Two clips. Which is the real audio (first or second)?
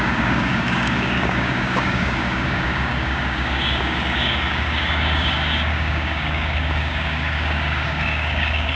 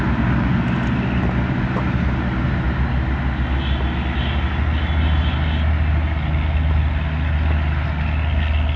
second